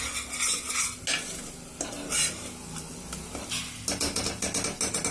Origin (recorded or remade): recorded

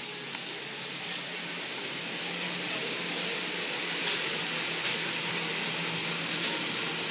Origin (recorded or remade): recorded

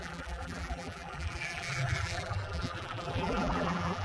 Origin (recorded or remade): remade